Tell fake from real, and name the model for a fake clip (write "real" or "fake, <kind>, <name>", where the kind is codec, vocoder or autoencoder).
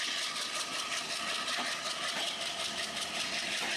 real